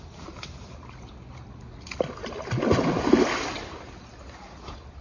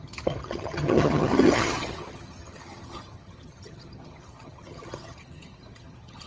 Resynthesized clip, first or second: second